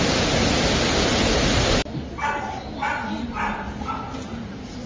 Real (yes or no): yes